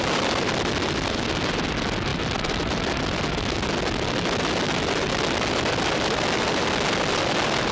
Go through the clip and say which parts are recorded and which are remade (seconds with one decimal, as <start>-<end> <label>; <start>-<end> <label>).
0.0-2.1 recorded; 2.1-3.2 remade; 3.2-7.7 recorded